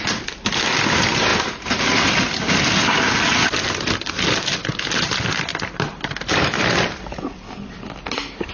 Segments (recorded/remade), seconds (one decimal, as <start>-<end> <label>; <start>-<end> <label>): 0.0-8.5 recorded